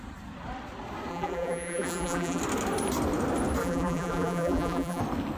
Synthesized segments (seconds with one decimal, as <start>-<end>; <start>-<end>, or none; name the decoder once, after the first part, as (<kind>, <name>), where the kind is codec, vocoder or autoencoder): 1.1-2.4 (vocoder, BigVGAN v2); 3.6-5.0